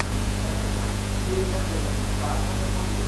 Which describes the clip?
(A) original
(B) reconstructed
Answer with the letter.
B